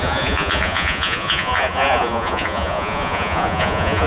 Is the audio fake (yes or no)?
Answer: yes